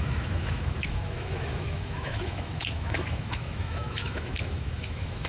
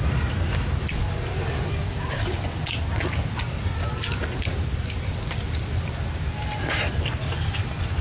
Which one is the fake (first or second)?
first